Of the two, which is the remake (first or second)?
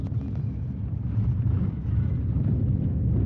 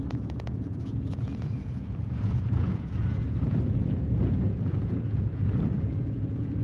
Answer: second